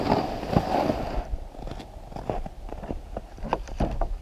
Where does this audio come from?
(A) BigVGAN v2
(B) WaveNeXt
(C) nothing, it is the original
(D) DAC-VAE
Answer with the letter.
A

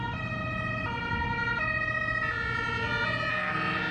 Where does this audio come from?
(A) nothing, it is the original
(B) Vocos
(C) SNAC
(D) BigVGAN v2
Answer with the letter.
A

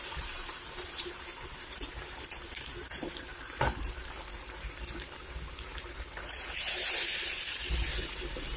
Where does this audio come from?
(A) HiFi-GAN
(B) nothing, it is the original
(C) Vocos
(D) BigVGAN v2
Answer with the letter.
D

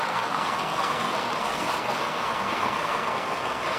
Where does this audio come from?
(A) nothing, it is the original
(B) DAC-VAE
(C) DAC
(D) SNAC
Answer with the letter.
D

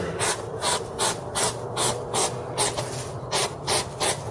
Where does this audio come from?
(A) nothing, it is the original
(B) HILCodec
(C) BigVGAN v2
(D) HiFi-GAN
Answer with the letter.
A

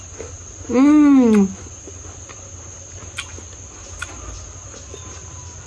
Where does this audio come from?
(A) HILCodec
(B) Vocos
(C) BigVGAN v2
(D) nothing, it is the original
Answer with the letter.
D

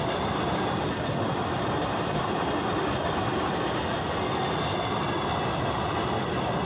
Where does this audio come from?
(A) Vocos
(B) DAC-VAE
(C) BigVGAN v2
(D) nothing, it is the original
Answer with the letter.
D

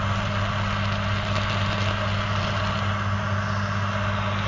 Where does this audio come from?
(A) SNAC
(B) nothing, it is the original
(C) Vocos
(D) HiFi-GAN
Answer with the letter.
B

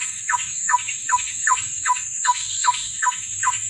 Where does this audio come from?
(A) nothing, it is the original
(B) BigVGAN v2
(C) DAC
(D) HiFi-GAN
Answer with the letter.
C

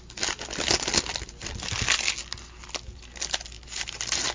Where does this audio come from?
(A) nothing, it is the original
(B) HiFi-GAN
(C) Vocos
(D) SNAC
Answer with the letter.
A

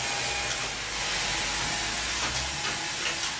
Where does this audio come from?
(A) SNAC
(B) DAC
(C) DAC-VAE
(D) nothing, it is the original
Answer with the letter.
D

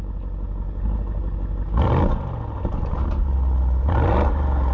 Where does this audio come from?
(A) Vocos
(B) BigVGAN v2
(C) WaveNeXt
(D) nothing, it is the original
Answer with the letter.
D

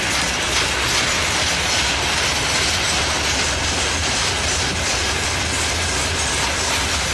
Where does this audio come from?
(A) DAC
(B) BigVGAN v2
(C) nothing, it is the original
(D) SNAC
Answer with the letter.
C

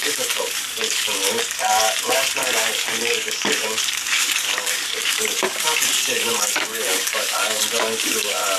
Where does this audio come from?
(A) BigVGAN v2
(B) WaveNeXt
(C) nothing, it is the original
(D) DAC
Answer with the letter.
D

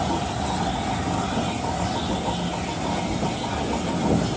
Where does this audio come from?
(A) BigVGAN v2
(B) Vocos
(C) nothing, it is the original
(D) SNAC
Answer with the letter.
C